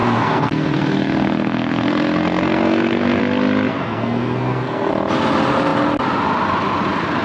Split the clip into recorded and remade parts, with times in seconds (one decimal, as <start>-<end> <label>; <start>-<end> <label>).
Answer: 0.0-3.2 remade; 3.2-3.7 recorded; 3.7-4.9 remade; 4.9-7.2 recorded